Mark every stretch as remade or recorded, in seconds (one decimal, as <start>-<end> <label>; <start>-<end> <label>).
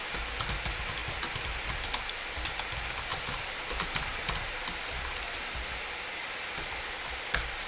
0.0-7.7 recorded